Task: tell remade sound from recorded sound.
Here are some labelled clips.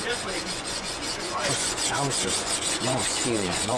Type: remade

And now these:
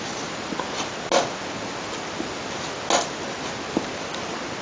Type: recorded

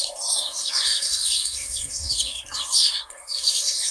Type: remade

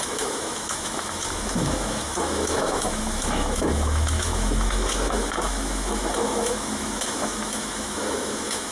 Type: remade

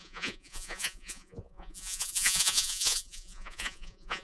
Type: remade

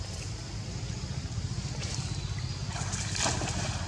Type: recorded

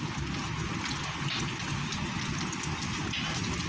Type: recorded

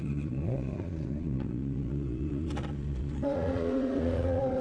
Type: remade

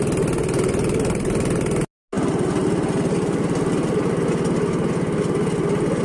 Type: recorded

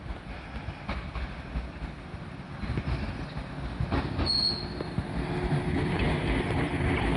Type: recorded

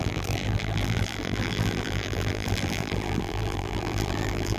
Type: remade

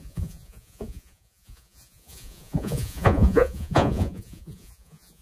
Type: remade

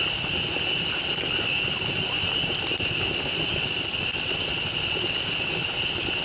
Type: recorded